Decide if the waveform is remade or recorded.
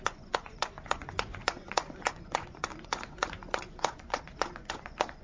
remade